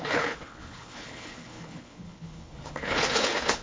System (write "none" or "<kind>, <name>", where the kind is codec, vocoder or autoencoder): codec, HILCodec